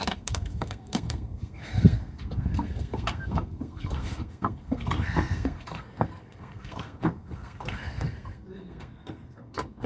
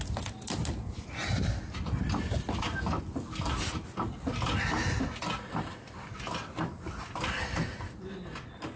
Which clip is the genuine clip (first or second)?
second